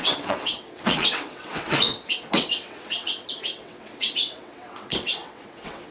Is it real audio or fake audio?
fake